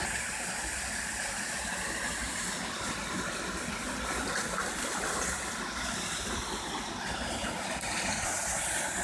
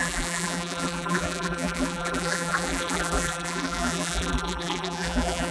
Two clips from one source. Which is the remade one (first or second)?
second